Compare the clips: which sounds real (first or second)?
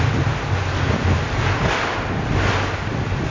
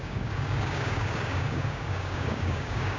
first